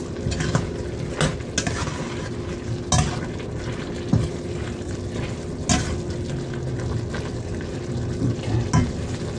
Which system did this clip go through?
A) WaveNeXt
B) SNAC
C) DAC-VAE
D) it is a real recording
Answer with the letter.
D